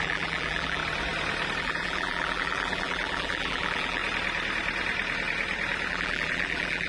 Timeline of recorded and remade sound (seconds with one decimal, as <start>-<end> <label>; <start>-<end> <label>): 0.0-0.8 remade; 0.8-1.6 recorded; 1.6-4.0 remade; 4.0-5.9 recorded; 5.9-6.9 remade

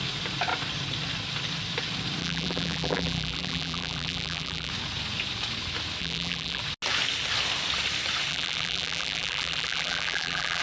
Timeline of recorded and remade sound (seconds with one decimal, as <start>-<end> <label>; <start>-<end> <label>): 0.0-2.2 recorded; 2.2-4.7 remade; 4.7-6.0 recorded; 6.0-6.6 remade; 6.6-8.3 recorded; 8.3-10.6 remade